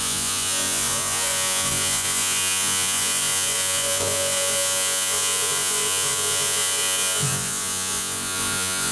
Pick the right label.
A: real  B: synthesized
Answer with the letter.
B